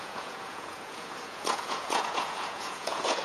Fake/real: fake